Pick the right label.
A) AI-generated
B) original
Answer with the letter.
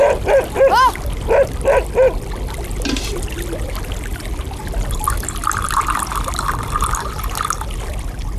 B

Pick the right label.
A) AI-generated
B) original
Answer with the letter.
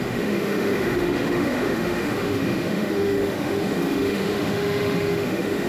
A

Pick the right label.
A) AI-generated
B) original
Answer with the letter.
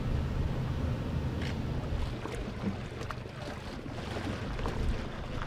B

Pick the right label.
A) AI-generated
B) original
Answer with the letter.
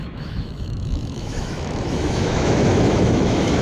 A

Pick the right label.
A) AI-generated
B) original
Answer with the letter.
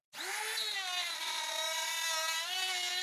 B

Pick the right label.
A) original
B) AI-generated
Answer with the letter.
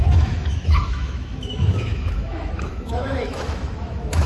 B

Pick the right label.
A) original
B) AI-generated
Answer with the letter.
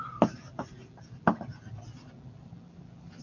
A